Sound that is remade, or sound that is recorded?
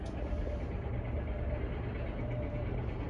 recorded